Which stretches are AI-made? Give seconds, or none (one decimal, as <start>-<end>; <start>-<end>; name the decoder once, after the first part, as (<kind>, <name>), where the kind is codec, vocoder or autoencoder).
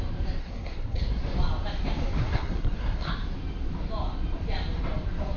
0.4-1.2 (codec, SNAC); 2.2-3.1